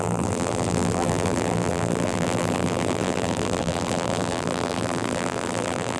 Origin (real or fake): fake